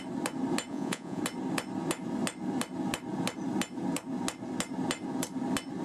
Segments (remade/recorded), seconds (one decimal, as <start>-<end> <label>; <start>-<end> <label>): 0.0-0.7 recorded; 0.7-1.2 remade; 1.2-5.8 recorded